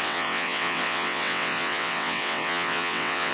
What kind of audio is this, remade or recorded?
remade